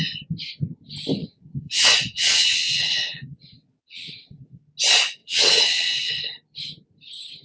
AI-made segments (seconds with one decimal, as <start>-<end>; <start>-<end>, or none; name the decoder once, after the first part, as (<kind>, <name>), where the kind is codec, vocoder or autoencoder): 1.2-4.6 (vocoder, WaveNeXt); 5.2-6.2